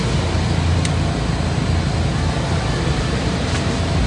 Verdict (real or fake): real